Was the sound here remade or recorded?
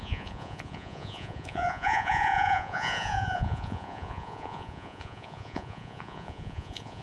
remade